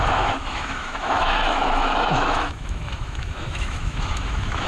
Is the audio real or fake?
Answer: fake